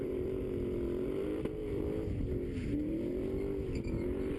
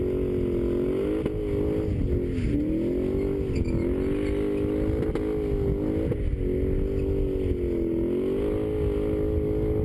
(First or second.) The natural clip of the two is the second